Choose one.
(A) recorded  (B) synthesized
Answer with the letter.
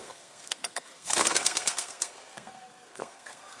B